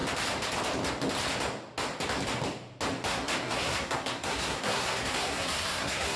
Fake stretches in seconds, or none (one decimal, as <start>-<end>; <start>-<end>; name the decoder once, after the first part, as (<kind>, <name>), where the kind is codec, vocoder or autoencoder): 3.1-6.2 (codec, SNAC)